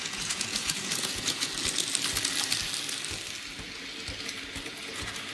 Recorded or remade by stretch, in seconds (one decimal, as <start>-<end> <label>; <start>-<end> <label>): 0.0-1.5 remade; 1.5-4.7 recorded; 4.7-5.3 remade